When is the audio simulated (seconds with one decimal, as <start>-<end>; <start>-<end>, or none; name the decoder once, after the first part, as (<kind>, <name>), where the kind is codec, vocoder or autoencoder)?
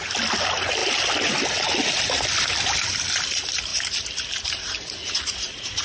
5.0-5.8 (vocoder, Vocos)